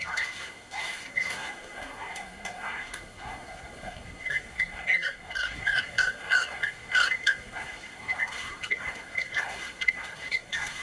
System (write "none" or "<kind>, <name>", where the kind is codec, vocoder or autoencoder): codec, SNAC